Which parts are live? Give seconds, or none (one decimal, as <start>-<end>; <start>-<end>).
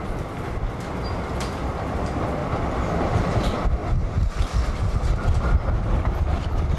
2.4-3.2; 3.8-4.7